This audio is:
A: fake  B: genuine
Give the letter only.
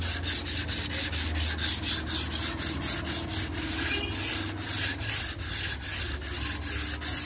B